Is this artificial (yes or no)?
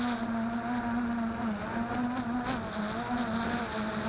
no